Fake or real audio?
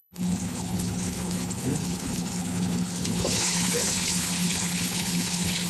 fake